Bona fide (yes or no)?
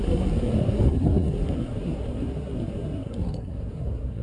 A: no